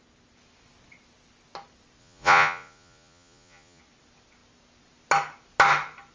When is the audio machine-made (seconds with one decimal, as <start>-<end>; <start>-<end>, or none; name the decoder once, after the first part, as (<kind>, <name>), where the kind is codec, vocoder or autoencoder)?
2.0-3.8 (vocoder, Vocos)